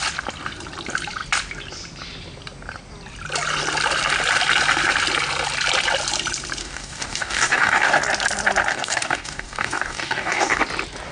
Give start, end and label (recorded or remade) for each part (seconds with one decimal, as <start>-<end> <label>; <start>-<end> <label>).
0.0-6.6 recorded; 6.6-8.0 remade; 8.0-8.7 recorded; 8.7-10.6 remade; 10.6-11.1 recorded

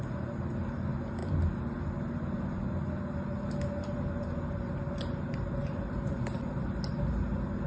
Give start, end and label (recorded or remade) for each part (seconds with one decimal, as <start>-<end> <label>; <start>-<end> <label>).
0.0-5.6 recorded; 5.6-6.9 remade; 6.9-7.7 recorded

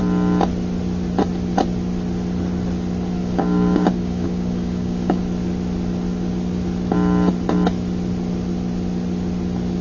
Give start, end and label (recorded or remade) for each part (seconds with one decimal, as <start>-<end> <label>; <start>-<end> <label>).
0.0-3.2 recorded; 3.2-5.2 remade; 5.2-9.8 recorded

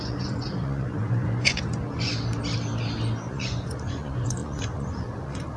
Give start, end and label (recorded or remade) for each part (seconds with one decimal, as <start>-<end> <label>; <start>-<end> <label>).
0.0-2.1 remade; 2.1-3.3 recorded; 3.3-5.6 remade

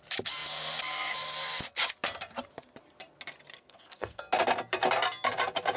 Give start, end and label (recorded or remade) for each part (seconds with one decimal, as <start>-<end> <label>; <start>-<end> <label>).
0.0-3.5 recorded; 3.5-4.2 remade; 4.2-5.8 recorded